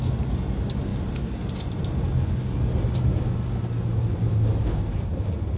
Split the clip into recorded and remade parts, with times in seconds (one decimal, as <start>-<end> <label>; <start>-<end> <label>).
0.0-5.6 recorded